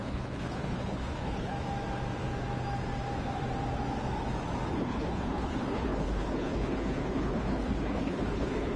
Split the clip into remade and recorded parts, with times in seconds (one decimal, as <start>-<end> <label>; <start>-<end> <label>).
0.0-1.5 remade; 1.5-4.7 recorded; 4.7-8.8 remade